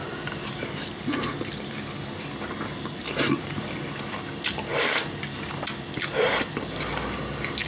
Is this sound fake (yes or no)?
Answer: no